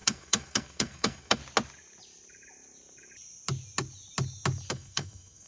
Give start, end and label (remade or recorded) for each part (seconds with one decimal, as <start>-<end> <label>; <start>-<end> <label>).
0.0-1.4 remade; 1.4-4.7 recorded; 4.7-5.5 remade